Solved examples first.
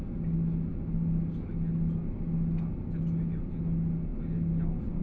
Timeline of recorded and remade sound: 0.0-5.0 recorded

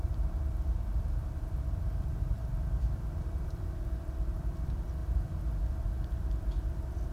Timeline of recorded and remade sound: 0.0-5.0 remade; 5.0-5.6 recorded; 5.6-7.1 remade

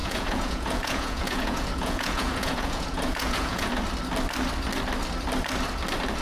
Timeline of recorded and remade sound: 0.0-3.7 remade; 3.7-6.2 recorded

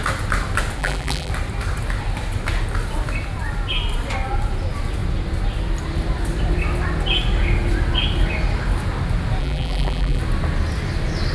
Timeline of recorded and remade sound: 0.0-0.8 recorded; 0.8-1.3 remade; 1.3-9.4 recorded; 9.4-10.2 remade; 10.2-11.3 recorded

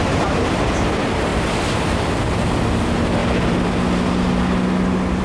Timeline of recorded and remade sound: 0.0-0.8 remade; 0.8-5.2 recorded